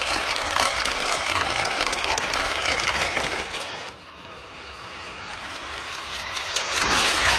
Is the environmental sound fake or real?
fake